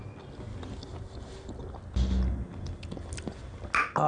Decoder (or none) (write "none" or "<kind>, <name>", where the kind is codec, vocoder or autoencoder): none